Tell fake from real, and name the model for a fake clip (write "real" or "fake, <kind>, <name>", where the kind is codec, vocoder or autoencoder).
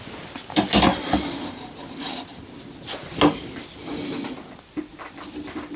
real